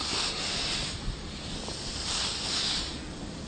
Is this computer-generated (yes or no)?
no